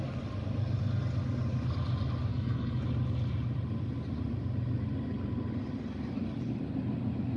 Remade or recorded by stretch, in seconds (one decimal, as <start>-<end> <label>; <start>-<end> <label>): 0.0-2.3 recorded; 2.3-2.8 remade; 2.8-7.4 recorded